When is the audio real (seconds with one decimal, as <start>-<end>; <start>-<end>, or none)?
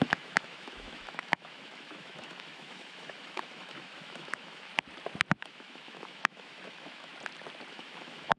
4.7-5.4; 7.1-7.7